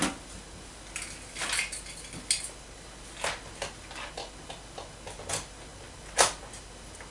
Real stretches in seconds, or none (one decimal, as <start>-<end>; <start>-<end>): 0.0-7.1